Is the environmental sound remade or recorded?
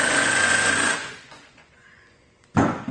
remade